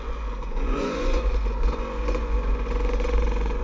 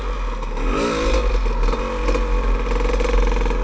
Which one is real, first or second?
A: second